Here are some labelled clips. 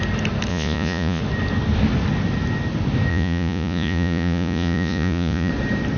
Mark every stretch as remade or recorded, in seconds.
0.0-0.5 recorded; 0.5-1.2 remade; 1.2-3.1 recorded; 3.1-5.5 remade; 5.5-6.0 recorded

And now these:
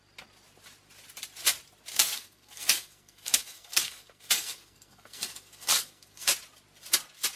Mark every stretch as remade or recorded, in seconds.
0.0-1.9 recorded; 1.9-6.3 remade; 6.3-7.4 recorded

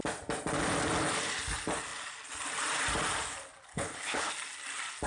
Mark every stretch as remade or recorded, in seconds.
0.0-3.7 recorded; 3.7-4.3 remade; 4.3-5.1 recorded

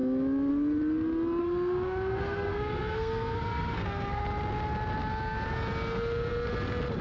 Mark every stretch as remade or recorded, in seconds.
0.0-1.4 recorded; 1.4-4.2 remade; 4.2-7.0 recorded